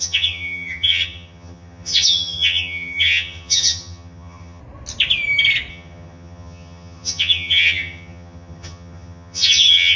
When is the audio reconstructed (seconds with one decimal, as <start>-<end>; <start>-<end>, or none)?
0.0-4.6; 5.7-10.0